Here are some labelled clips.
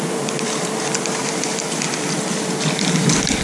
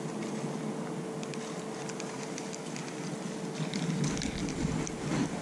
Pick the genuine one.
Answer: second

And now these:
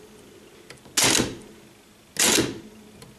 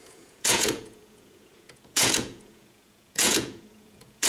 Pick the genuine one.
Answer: first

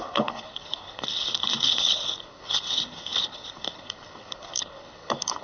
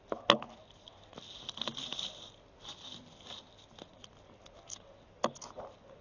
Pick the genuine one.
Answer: second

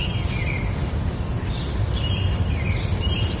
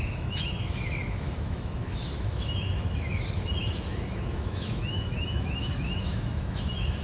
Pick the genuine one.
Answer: first